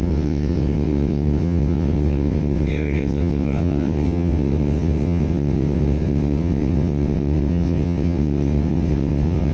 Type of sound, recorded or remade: remade